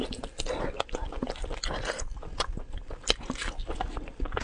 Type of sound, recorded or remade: recorded